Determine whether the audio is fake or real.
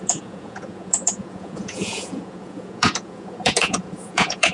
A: fake